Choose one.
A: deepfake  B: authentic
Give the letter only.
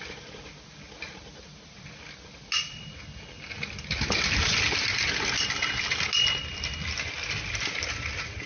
B